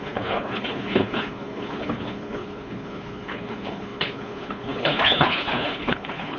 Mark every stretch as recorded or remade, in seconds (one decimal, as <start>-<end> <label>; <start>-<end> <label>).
0.0-6.4 remade